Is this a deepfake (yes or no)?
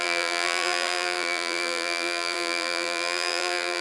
yes